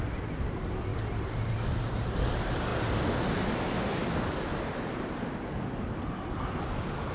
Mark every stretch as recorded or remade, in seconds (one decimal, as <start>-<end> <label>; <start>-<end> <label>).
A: 0.0-7.1 recorded